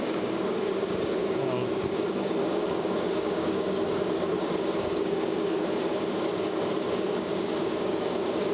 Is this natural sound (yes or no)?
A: no